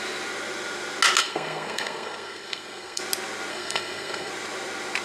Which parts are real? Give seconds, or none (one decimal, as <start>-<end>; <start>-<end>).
0.0-1.2; 3.0-3.5; 4.3-5.0